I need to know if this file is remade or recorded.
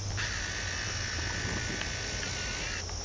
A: recorded